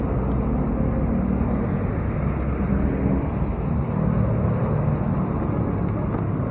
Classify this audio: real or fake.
real